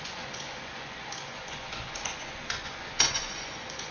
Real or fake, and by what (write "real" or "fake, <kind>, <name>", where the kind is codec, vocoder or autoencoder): fake, vocoder, Vocos